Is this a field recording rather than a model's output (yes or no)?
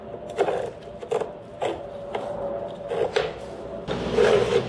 yes